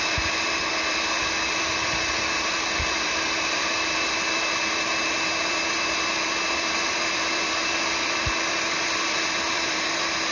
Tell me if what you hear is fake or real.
fake